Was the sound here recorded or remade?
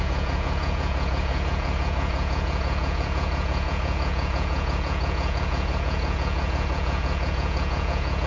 remade